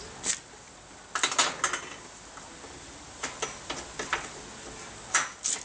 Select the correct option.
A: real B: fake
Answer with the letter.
A